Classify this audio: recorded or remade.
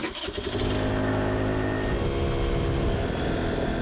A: recorded